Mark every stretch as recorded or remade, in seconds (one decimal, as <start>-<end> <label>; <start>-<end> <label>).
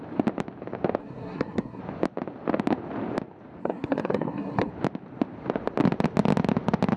0.0-1.0 recorded; 1.0-1.8 remade; 1.8-3.6 recorded; 3.6-4.7 remade; 4.7-7.0 recorded